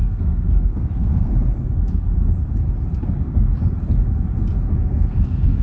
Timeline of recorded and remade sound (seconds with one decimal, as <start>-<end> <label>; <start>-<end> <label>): 0.0-1.3 remade; 1.3-4.7 recorded; 4.7-5.6 remade